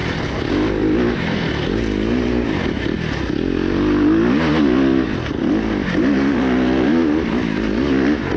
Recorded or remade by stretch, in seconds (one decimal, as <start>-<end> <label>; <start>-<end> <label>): 0.0-8.4 recorded